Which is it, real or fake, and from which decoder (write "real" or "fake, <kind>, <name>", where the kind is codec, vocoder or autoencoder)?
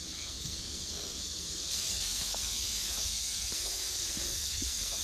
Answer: fake, codec, SNAC